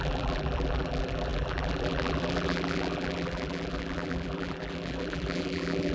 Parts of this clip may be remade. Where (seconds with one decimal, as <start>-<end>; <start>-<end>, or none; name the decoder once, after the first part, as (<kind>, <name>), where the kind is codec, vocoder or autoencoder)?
0.0-5.9 (vocoder, BigVGAN v2)